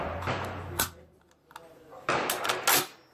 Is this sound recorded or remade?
recorded